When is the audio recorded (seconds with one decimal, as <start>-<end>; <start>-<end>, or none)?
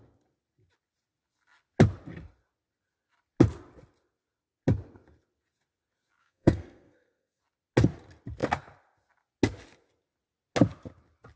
0.0-6.2; 7.4-11.4